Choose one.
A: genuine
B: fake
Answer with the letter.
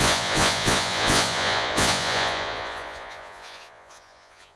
B